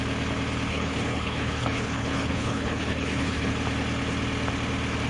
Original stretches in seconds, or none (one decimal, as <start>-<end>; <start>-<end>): 0.0-0.7; 3.5-5.1